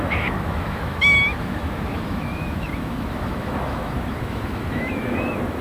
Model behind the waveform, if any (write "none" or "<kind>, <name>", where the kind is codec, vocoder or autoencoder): autoencoder, DAC-VAE